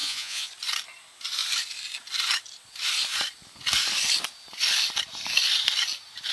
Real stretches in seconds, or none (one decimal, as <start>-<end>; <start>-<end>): 0.5-6.3